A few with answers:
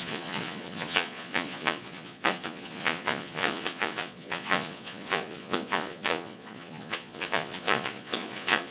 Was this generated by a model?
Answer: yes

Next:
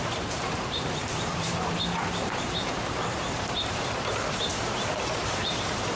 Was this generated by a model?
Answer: yes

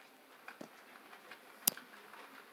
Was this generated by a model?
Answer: yes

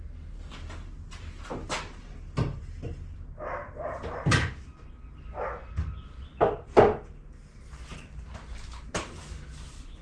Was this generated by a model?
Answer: no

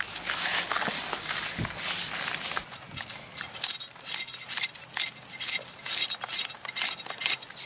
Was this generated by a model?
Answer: no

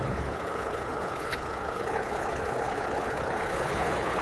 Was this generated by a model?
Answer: yes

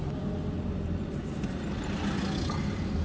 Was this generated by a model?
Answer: no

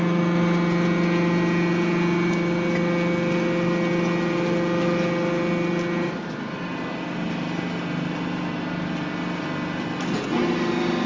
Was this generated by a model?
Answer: no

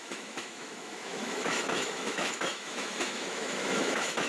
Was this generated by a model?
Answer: yes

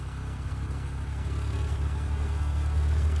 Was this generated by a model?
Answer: yes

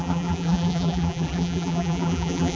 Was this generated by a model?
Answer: yes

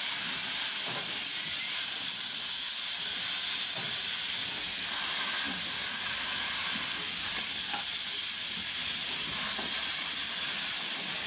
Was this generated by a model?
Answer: no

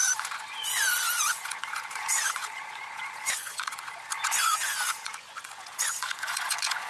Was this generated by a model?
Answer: yes